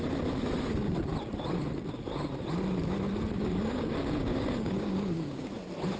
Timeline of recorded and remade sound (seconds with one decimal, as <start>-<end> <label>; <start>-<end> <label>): 0.0-3.4 recorded; 3.4-5.5 remade; 5.5-6.0 recorded